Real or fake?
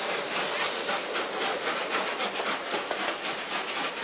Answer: real